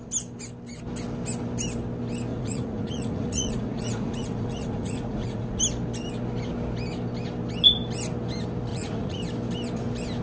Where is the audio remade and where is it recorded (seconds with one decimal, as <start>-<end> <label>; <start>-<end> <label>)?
0.0-2.3 recorded; 2.3-5.6 remade; 5.6-8.7 recorded; 8.7-9.2 remade; 9.2-10.2 recorded